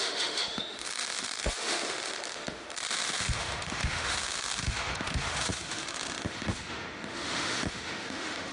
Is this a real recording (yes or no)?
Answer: no